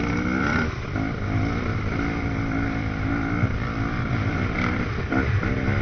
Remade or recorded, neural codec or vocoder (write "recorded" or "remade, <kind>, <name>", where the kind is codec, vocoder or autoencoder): remade, vocoder, BigVGAN v2